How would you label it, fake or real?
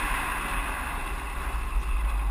real